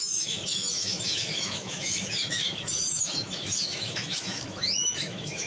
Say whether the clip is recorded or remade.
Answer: remade